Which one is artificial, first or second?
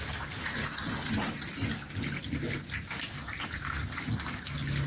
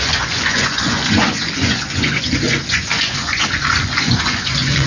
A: second